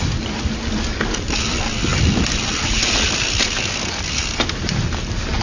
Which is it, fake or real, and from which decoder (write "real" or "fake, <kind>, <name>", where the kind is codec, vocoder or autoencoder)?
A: real